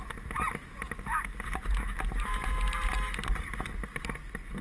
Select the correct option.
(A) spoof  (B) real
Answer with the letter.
B